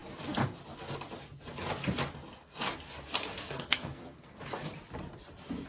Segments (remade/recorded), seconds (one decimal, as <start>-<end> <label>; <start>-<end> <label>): 0.0-3.2 recorded; 3.2-4.4 remade; 4.4-5.7 recorded